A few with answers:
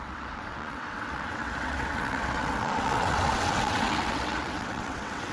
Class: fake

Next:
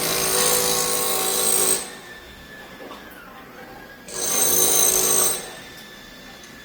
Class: real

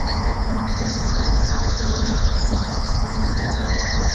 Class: fake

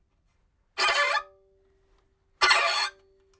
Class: real